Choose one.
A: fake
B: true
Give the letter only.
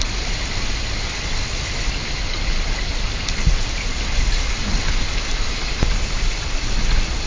B